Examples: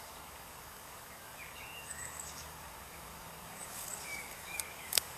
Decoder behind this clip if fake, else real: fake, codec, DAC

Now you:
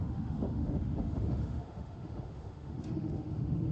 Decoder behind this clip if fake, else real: fake, autoencoder, DAC-VAE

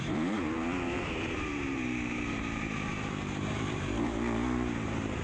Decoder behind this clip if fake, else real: fake, vocoder, BigVGAN v2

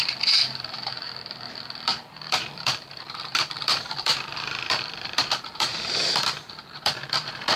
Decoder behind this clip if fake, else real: fake, vocoder, BigVGAN v2